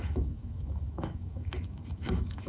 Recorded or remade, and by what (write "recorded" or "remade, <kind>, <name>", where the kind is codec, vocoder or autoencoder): remade, autoencoder, DAC-VAE